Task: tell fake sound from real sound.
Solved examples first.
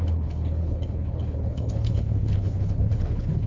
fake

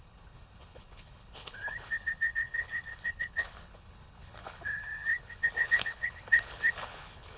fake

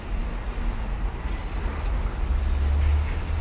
real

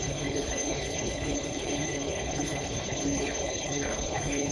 fake